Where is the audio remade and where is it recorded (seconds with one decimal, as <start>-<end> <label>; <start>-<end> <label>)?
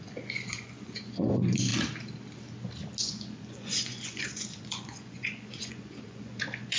0.0-1.7 remade; 1.7-3.0 recorded; 3.0-6.8 remade